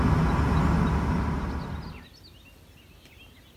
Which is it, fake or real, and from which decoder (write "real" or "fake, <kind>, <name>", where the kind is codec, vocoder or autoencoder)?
real